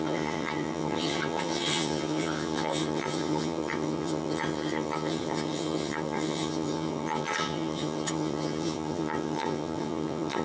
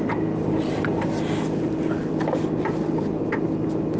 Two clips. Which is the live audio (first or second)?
second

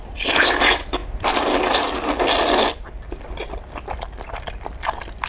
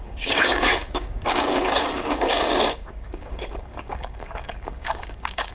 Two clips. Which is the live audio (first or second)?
first